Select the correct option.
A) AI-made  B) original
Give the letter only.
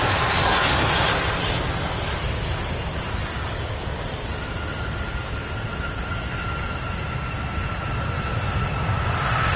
B